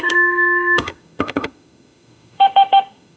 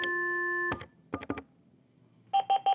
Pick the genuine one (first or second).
second